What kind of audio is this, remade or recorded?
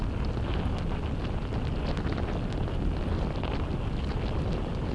recorded